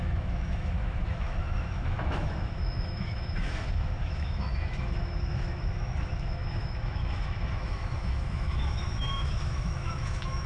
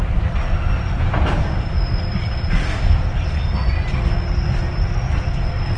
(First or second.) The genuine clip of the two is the second